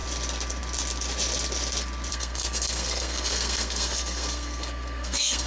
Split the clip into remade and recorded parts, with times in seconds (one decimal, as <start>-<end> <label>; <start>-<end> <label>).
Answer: 0.0-2.1 recorded; 2.1-5.5 remade

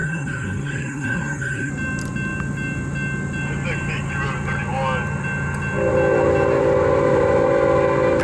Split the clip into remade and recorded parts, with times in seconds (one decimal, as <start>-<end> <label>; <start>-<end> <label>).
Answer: 0.0-1.7 remade; 1.7-8.2 recorded

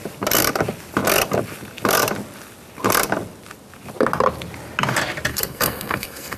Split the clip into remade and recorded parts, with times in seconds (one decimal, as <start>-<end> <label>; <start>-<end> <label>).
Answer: 0.0-5.3 recorded; 5.3-6.4 remade

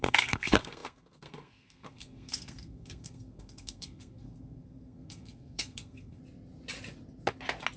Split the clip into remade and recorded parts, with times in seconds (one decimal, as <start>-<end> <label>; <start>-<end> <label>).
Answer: 0.0-6.2 remade; 6.2-7.8 recorded

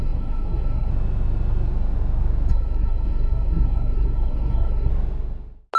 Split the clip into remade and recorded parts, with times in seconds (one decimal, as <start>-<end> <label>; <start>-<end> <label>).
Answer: 0.0-0.9 remade; 0.9-2.5 recorded; 2.5-4.9 remade; 4.9-5.8 recorded